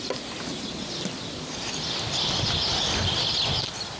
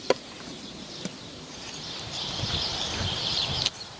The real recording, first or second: first